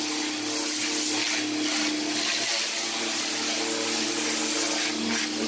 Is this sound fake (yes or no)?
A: no